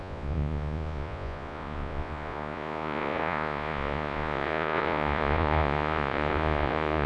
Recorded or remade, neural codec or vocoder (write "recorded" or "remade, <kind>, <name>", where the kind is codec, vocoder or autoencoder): remade, vocoder, Vocos